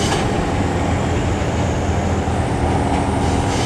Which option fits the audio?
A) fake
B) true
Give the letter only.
B